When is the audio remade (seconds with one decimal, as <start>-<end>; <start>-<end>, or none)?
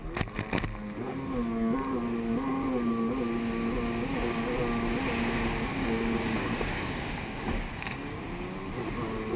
5.7-8.2